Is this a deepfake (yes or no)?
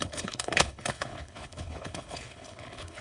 yes